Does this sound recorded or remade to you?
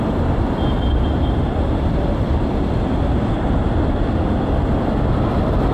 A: remade